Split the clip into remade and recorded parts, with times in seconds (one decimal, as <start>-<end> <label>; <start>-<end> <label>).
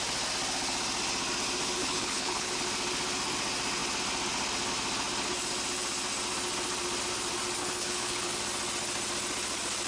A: 0.0-1.8 recorded; 1.8-2.6 remade; 2.6-7.6 recorded; 7.6-8.3 remade; 8.3-9.9 recorded